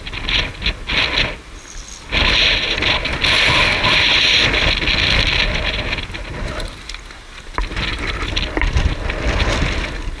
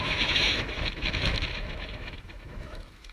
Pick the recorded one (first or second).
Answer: first